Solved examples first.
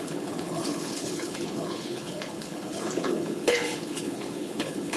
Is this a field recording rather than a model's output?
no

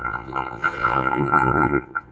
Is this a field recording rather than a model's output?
no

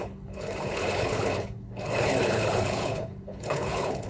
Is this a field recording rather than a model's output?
no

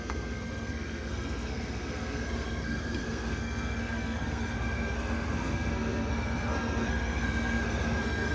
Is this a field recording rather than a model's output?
no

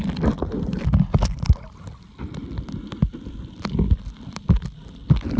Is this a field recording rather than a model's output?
yes